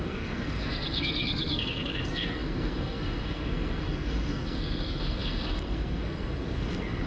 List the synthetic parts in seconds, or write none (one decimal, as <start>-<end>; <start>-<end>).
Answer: 0.0-7.1